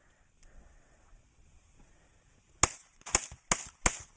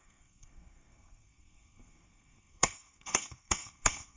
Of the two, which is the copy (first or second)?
second